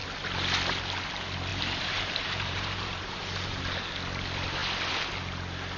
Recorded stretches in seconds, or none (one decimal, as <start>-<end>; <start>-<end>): 0.0-1.5; 3.6-5.8